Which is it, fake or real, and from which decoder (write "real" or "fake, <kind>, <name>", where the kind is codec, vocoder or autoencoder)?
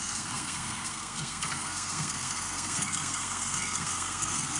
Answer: fake, codec, SNAC